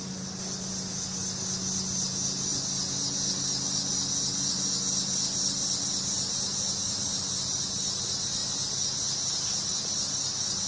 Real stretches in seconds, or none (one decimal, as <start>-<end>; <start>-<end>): 0.0-10.7